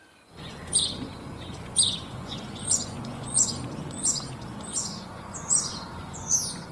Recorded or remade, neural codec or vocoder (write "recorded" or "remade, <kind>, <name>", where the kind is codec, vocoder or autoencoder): remade, vocoder, Vocos